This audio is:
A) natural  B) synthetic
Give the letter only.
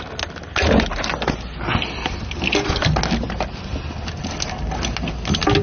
A